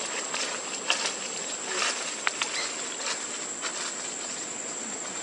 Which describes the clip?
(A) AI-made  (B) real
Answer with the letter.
B